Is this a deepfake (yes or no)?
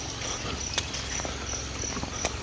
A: no